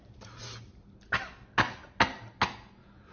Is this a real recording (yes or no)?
yes